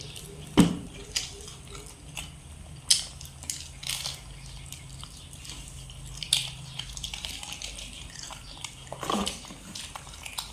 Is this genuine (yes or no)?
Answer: yes